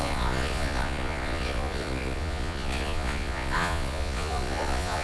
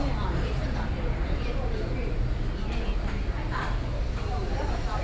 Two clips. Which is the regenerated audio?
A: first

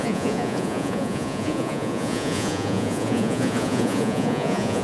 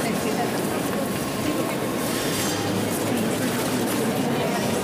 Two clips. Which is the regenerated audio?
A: first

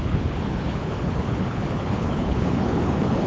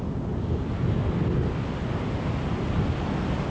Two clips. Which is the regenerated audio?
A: first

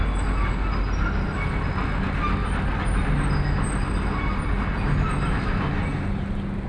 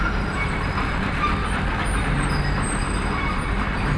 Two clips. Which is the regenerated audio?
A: second